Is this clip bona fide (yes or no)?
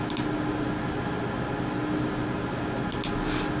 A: yes